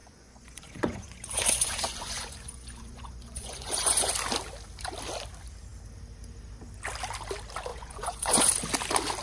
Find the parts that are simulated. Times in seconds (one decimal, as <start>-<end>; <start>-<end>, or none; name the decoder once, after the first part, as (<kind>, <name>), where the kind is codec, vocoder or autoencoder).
0.0-4.1 (vocoder, Vocos); 7.7-8.5

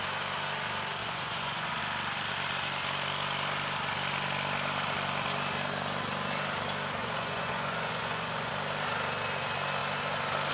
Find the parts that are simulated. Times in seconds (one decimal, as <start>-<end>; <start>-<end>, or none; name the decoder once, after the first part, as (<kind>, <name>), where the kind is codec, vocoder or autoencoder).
1.0-1.8 (vocoder, Vocos); 7.0-8.5

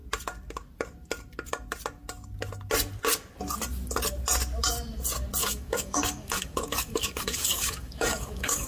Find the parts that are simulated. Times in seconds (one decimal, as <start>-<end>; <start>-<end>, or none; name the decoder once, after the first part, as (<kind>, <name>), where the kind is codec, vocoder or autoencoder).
5.4-8.7 (codec, DAC)

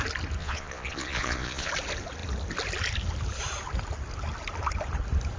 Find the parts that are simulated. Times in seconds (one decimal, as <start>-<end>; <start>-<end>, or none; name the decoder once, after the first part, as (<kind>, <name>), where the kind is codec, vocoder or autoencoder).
0.4-1.7 (vocoder, Vocos)

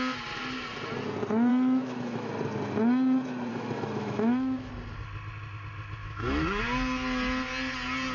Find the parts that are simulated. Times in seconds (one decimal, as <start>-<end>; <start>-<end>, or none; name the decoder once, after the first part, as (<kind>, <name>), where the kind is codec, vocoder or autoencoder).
1.5-2.3 (autoencoder, DAC-VAE); 3.5-4.7; 6.0-6.6

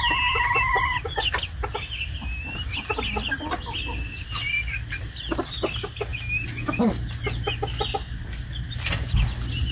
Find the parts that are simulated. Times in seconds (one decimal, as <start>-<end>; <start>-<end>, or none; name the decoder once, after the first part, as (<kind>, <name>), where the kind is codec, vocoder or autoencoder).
none

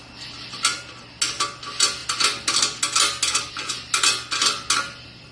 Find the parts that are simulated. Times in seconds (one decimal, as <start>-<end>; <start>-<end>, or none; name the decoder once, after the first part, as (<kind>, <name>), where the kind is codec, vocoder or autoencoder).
none